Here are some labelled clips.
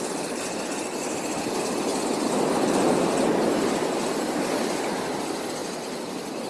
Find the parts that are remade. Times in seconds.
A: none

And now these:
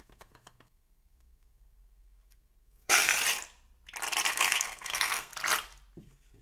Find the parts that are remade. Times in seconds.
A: 0.0-3.1 (codec, SNAC); 4.3-5.3; 6.0-6.4

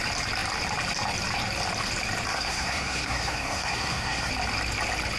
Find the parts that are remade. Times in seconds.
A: 2.3-4.3 (codec, SNAC)